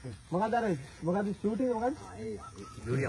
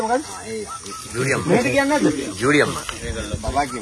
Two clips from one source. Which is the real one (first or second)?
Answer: second